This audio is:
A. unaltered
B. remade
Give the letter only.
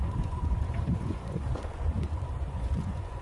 B